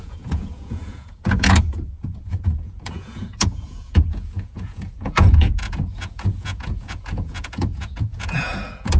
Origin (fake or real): fake